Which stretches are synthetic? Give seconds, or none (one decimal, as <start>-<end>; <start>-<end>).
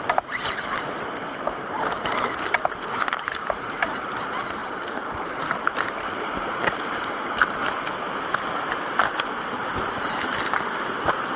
0.0-11.4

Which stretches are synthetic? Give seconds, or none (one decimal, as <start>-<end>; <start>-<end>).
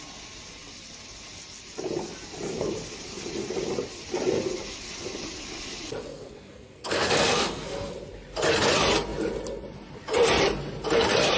6.1-7.9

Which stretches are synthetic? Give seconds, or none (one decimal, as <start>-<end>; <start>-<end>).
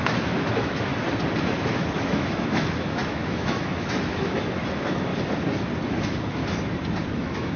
0.0-0.9; 1.4-5.1; 5.9-6.4; 7.1-7.6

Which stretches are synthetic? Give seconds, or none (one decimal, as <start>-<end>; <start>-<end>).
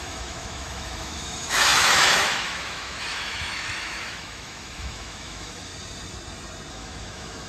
0.0-5.7; 6.7-7.5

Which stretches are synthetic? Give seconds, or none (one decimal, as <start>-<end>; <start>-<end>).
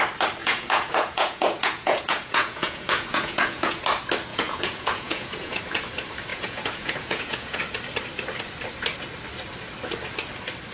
0.4-3.8; 4.3-5.6; 6.3-7.6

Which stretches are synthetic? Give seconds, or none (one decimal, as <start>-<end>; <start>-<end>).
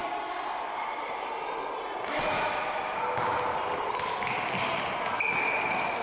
none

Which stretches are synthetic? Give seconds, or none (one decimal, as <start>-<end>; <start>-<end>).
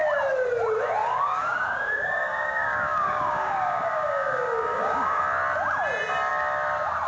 1.0-5.2